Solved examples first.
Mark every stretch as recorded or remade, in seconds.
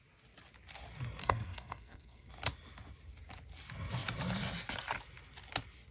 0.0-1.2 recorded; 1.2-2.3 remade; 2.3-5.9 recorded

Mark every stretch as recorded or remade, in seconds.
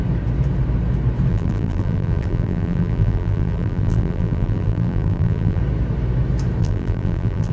0.0-1.3 recorded; 1.3-5.6 remade; 5.6-6.6 recorded; 6.6-7.5 remade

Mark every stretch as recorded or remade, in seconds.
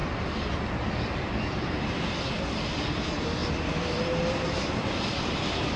0.0-3.4 recorded; 3.4-5.8 remade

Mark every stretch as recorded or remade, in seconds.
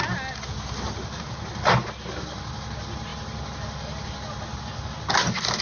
0.0-5.6 recorded